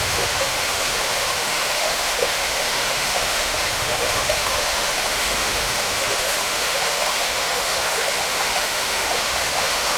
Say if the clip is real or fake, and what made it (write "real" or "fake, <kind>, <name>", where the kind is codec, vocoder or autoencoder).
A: fake, autoencoder, DAC-VAE